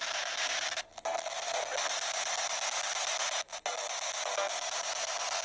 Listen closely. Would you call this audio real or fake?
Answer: real